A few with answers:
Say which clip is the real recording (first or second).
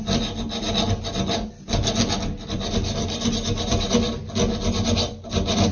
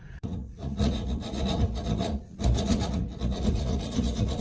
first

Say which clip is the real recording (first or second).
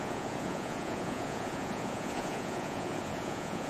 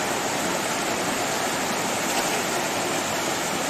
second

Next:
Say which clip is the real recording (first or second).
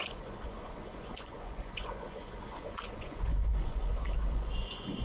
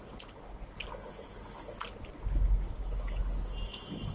second